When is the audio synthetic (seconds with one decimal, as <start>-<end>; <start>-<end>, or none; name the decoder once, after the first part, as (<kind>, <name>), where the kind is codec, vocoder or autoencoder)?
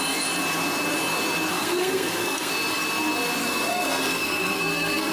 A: 1.5-2.5 (codec, SNAC); 3.4-5.1